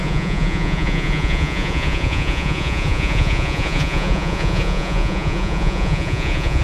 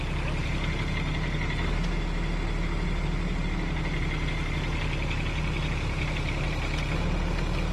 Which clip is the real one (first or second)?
second